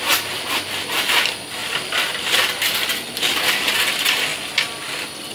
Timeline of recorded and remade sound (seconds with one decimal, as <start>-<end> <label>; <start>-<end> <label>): 0.0-5.3 recorded